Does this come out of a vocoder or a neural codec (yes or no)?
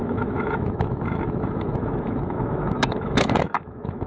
yes